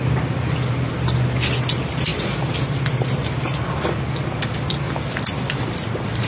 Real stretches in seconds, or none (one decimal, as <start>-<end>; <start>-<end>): 0.0-6.3